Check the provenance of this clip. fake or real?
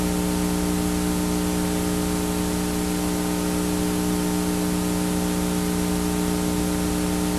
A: real